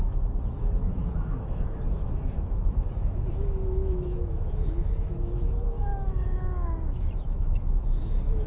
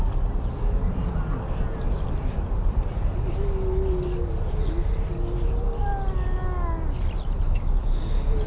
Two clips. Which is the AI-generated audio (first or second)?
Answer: first